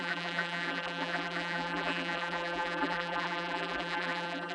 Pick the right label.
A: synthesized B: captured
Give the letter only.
A